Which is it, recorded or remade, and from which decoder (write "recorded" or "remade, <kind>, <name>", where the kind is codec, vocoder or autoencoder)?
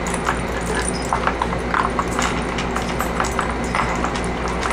recorded